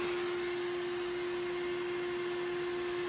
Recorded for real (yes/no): yes